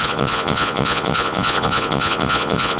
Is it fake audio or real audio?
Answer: fake